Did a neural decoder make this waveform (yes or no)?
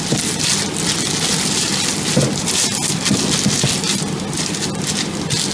no